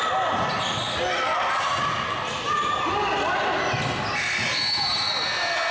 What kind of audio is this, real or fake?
real